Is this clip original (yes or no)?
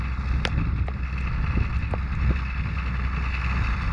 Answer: yes